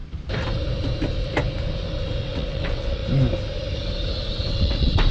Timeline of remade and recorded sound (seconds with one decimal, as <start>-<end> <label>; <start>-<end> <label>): 0.0-2.2 recorded; 2.2-3.0 remade; 3.0-4.5 recorded; 4.5-5.1 remade

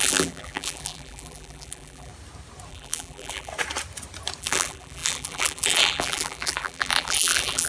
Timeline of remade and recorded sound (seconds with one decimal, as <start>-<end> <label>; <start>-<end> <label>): 0.0-2.1 remade; 2.1-2.7 recorded; 2.7-3.5 remade; 3.5-4.4 recorded; 4.4-7.7 remade

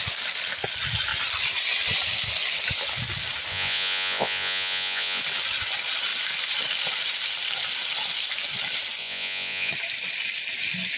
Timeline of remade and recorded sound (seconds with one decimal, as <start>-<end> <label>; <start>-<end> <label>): 0.0-3.5 recorded; 3.5-5.2 remade; 5.2-9.0 recorded; 9.0-9.7 remade; 9.7-11.0 recorded

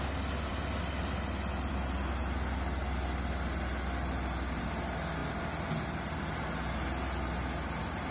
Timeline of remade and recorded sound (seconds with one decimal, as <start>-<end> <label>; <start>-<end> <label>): 0.0-8.1 recorded

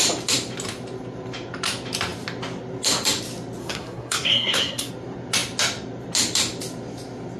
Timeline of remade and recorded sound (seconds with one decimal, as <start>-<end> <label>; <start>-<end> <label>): 0.0-3.6 recorded; 3.6-4.9 remade; 4.9-7.4 recorded

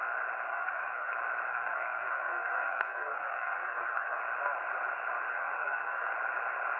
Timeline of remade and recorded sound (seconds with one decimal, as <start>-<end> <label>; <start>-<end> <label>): 0.0-0.5 recorded; 0.5-1.1 remade; 1.1-1.5 recorded; 1.5-4.2 remade; 4.2-5.3 recorded; 5.3-6.1 remade; 6.1-6.8 recorded

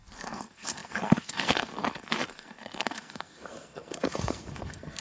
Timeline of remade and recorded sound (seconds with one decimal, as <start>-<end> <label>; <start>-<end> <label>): 0.0-5.0 remade

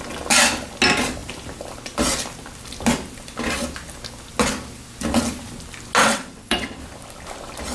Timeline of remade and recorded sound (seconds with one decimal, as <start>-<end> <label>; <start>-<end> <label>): 0.0-6.0 recorded; 6.0-6.8 remade; 6.8-7.7 recorded